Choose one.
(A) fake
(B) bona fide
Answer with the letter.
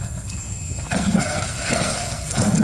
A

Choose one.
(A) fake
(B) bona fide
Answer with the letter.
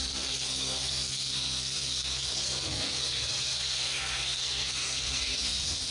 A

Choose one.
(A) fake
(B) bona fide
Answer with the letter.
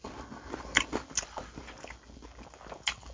B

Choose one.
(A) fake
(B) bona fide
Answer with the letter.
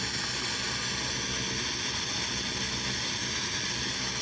B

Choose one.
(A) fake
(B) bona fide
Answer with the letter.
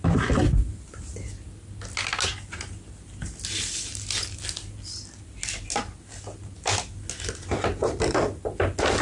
B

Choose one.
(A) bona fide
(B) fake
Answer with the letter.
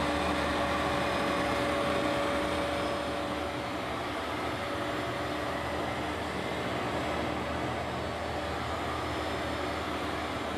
A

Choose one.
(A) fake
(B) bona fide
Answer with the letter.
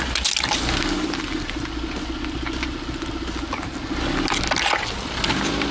B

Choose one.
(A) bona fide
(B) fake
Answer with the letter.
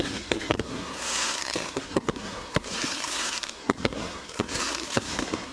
B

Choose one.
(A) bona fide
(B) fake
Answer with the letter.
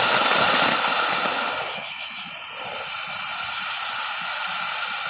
A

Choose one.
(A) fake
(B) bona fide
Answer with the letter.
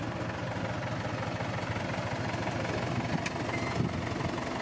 B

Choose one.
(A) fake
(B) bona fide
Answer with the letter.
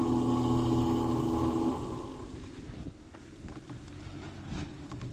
B